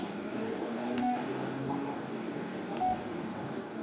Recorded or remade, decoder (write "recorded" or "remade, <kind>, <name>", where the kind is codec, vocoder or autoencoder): remade, codec, DAC